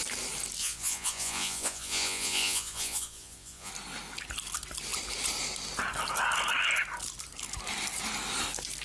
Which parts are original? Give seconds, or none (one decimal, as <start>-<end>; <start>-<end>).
0.0-0.6; 3.7-8.8